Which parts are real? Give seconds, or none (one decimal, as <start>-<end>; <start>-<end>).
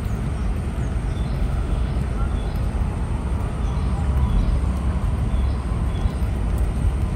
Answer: 0.0-1.4; 1.9-7.2